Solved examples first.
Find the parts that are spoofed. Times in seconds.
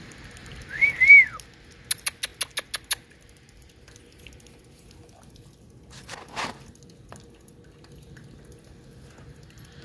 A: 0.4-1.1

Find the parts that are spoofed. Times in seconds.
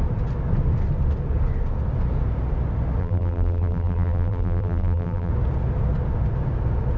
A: 3.0-5.3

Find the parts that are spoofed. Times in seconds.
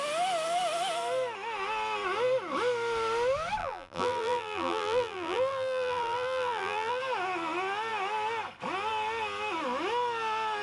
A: 3.6-7.0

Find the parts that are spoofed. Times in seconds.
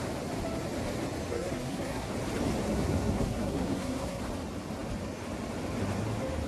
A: 1.3-2.1; 2.6-4.2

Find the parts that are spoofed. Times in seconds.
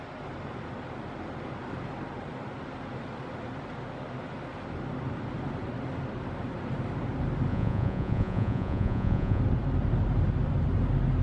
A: 7.5-9.4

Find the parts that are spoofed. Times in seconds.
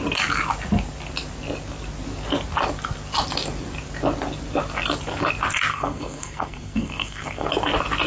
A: 5.7-7.5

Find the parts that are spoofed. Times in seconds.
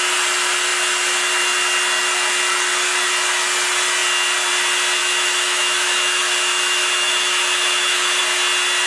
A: 5.0-8.2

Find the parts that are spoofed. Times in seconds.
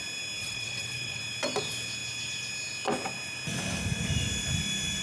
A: 0.4-1.2